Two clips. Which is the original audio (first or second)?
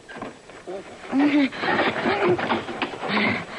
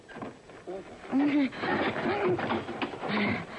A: second